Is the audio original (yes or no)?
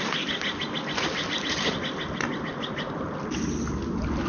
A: yes